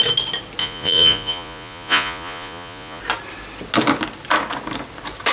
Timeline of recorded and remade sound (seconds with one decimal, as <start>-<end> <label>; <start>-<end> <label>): 0.0-0.6 recorded; 0.6-3.0 remade; 3.0-5.3 recorded